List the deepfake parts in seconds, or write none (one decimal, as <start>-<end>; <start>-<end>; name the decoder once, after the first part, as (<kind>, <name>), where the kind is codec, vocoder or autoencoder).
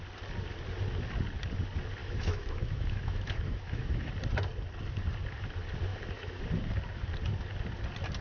2.0-4.1 (autoencoder, DAC-VAE); 5.9-6.4